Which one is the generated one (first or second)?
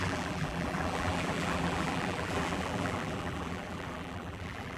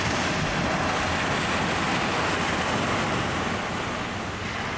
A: first